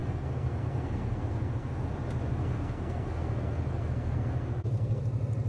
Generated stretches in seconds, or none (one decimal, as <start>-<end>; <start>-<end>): 0.0-1.9; 2.3-5.0